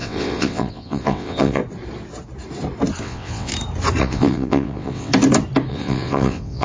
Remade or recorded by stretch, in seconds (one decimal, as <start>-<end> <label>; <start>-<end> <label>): 0.0-1.6 remade; 1.6-3.0 recorded; 3.0-3.5 remade; 3.5-4.0 recorded; 4.0-5.1 remade; 5.1-5.7 recorded; 5.7-6.6 remade